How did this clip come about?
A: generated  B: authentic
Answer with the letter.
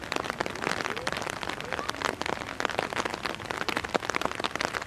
B